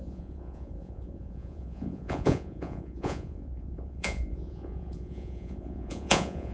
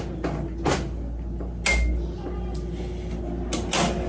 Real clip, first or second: second